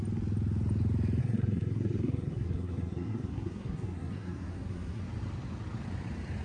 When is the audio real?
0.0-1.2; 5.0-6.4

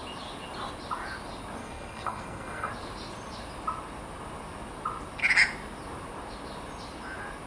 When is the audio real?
0.0-1.6; 2.7-7.5